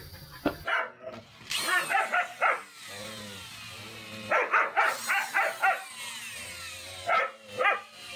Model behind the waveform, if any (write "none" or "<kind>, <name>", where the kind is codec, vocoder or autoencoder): none